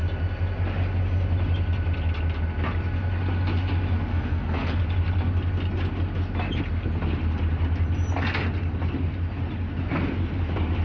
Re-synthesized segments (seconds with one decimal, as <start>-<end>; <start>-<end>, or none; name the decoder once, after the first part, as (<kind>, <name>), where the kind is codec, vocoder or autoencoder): 4.1-4.8 (codec, SNAC)